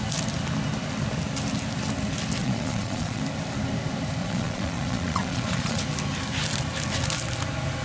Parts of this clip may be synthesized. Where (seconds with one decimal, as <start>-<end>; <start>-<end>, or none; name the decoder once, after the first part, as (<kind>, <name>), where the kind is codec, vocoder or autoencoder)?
2.4-3.2 (vocoder, Vocos); 4.2-5.8